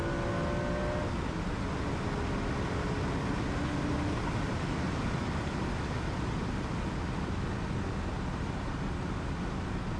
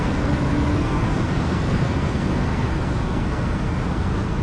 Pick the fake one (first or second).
second